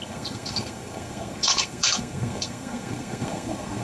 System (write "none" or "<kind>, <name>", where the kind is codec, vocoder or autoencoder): codec, SNAC